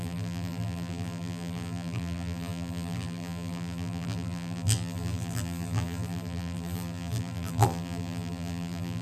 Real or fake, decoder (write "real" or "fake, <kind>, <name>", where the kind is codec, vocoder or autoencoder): fake, vocoder, BigVGAN v2